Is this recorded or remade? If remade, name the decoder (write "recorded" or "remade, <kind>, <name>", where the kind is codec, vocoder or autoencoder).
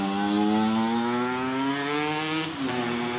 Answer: recorded